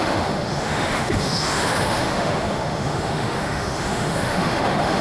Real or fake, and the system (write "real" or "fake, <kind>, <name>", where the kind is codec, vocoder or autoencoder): fake, autoencoder, DAC-VAE